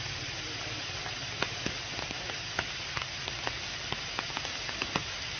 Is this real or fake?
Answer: real